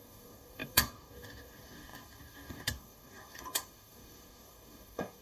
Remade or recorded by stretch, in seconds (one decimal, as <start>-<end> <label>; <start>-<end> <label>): 0.0-5.2 remade